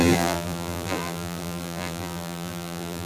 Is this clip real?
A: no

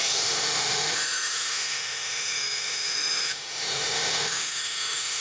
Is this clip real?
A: no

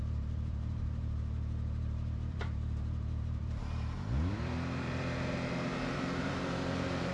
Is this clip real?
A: no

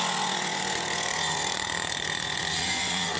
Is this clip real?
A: no